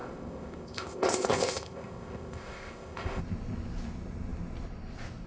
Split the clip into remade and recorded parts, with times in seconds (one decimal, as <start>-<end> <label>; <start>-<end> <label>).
0.0-3.2 remade; 3.2-5.3 recorded